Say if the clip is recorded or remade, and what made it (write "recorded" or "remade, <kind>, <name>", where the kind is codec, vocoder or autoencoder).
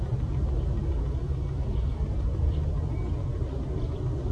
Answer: recorded